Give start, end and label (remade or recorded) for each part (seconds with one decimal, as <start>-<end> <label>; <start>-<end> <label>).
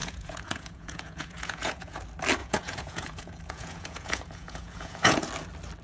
0.0-2.0 remade; 2.0-2.4 recorded; 2.4-5.3 remade; 5.3-5.8 recorded